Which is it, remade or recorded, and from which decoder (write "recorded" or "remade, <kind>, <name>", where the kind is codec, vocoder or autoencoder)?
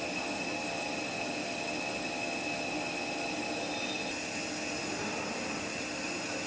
recorded